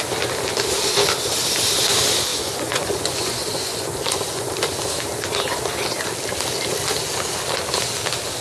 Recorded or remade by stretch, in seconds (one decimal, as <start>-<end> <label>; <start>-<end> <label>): 0.0-2.3 recorded; 2.3-4.5 remade; 4.5-8.4 recorded